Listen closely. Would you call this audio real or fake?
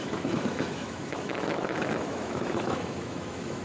fake